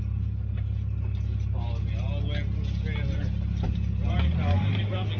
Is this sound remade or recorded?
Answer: recorded